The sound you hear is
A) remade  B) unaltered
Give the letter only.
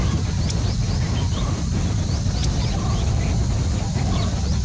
B